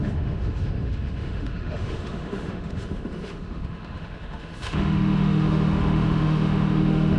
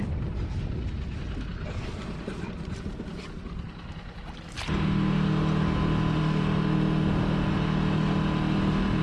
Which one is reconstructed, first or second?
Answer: first